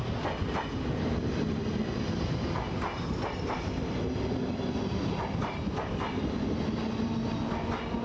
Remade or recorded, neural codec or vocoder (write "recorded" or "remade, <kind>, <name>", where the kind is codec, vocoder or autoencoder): recorded